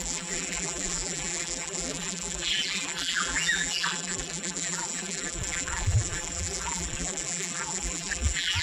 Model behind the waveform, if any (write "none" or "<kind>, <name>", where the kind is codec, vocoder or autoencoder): vocoder, BigVGAN v2